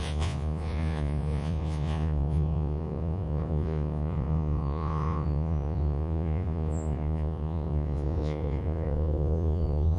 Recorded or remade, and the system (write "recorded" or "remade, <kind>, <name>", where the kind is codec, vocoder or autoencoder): remade, vocoder, Vocos